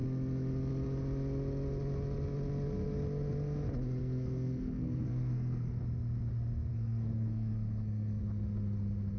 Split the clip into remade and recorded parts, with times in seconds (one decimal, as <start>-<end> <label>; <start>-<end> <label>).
0.0-4.0 recorded; 4.0-5.8 remade; 5.8-6.7 recorded; 6.7-8.2 remade; 8.2-9.2 recorded